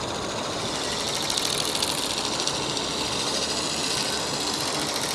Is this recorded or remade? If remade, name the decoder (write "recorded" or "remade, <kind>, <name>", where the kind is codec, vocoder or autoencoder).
recorded